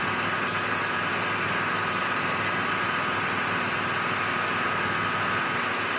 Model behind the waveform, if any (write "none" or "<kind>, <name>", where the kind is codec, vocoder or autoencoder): none